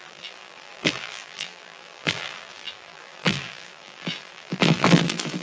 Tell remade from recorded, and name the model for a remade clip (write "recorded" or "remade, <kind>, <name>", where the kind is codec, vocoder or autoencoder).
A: remade, vocoder, BigVGAN v2